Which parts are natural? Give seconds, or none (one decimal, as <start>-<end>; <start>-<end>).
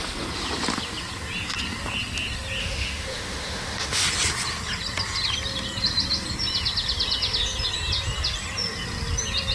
0.0-2.6; 4.0-9.5